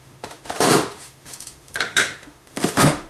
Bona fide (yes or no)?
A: no